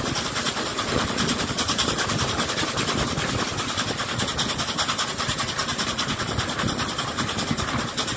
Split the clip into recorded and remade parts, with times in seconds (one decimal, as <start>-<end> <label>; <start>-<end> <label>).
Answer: 0.0-0.7 recorded; 0.7-2.5 remade; 2.5-8.2 recorded